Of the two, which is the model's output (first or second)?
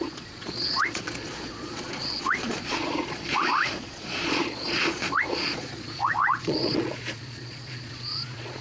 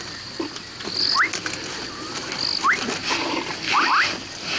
first